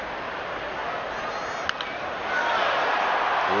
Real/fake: real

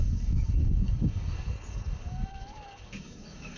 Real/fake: fake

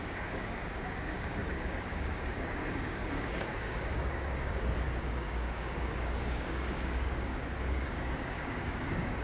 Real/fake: fake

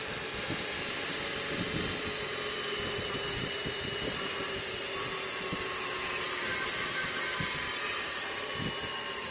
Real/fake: real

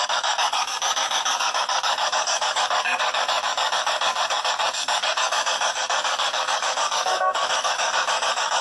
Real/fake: fake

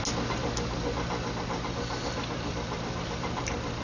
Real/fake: real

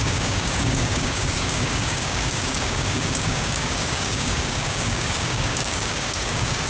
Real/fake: fake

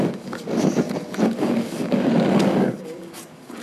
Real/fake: fake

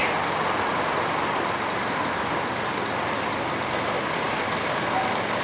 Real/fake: real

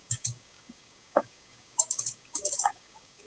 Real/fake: fake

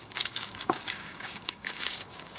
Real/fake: fake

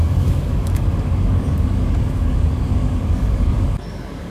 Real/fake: fake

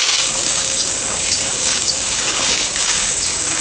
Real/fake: fake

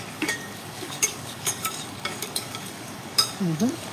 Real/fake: fake